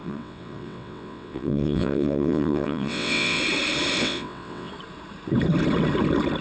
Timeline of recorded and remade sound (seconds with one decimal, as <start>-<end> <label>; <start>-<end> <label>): 0.0-3.4 remade; 3.4-4.0 recorded; 4.0-4.7 remade; 4.7-6.4 recorded